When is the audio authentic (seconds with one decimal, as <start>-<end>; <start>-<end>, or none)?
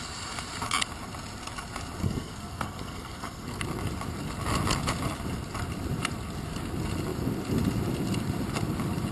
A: 0.0-2.0; 3.6-9.1